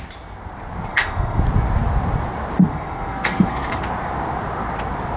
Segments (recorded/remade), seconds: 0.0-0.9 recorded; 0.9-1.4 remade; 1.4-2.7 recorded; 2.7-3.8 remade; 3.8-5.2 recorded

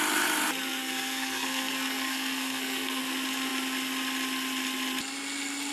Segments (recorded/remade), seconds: 0.0-0.8 recorded; 0.8-3.0 remade; 3.0-5.7 recorded

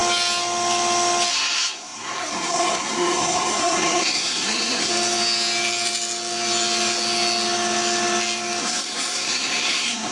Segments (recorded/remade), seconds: 0.0-1.3 recorded; 1.3-4.9 remade; 4.9-8.6 recorded; 8.6-10.1 remade

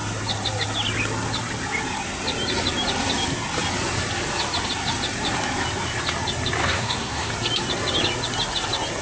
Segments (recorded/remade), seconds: 0.0-6.6 recorded; 6.6-7.3 remade; 7.3-9.0 recorded

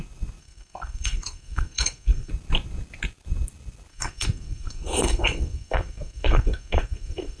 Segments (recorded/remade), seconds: 0.0-0.4 recorded; 0.4-2.3 remade; 2.3-3.9 recorded; 3.9-7.4 remade

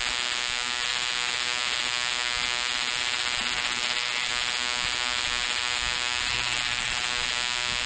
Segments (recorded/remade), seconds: 0.0-3.4 recorded; 3.4-4.3 remade; 4.3-6.3 recorded; 6.3-7.0 remade; 7.0-7.9 recorded

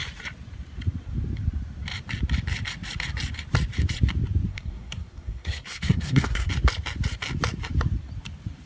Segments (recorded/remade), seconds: 0.0-4.5 recorded; 4.5-6.5 remade; 6.5-8.7 recorded